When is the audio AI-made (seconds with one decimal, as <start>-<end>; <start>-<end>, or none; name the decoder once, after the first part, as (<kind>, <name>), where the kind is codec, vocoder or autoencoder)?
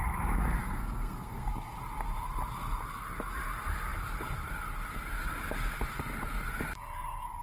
0.6-1.5 (codec, SNAC)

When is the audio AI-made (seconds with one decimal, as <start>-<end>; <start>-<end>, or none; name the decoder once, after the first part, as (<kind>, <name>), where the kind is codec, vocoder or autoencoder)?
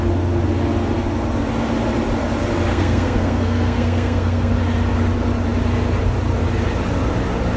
2.7-4.5 (codec, SNAC)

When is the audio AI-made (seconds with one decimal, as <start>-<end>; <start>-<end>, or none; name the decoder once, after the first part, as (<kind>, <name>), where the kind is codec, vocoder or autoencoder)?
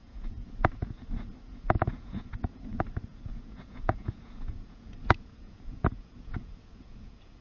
0.0-7.4 (vocoder, Vocos)